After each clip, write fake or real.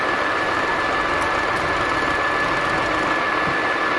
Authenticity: real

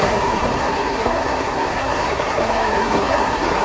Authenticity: fake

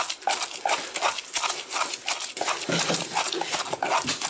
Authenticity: real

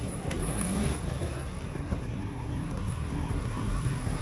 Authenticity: fake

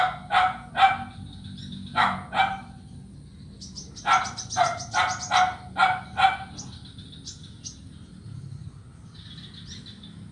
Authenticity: real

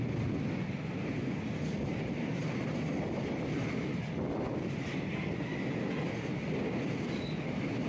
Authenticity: real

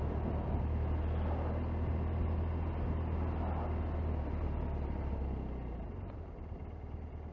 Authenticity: real